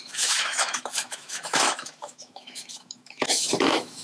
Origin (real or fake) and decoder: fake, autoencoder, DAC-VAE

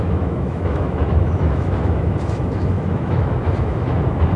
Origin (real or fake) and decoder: fake, autoencoder, DAC-VAE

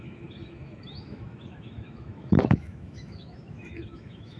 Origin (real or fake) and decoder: fake, autoencoder, DAC-VAE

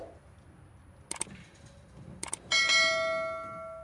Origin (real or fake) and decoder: real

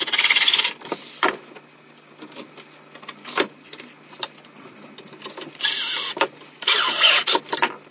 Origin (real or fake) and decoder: real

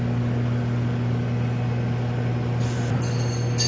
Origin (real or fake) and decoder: real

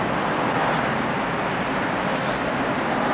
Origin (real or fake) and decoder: real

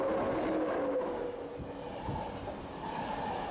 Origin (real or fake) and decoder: real